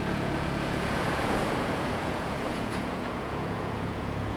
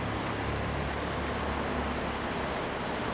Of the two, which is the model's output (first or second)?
first